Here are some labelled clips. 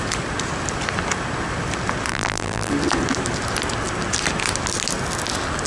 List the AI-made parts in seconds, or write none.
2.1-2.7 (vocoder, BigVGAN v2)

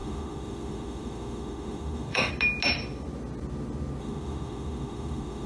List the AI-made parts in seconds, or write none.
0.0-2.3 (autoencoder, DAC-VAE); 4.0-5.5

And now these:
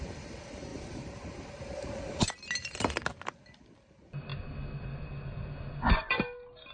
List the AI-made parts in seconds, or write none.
0.7-2.3 (vocoder, BigVGAN v2)

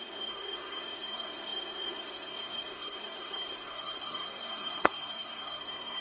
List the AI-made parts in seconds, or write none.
0.0-6.0 (codec, SNAC)

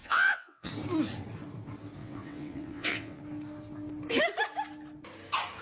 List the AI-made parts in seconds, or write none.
0.0-0.7 (vocoder, WaveNeXt); 2.0-3.2